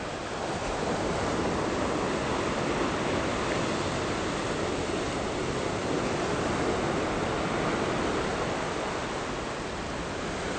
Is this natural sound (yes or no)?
yes